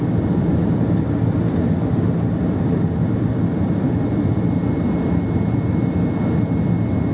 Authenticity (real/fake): real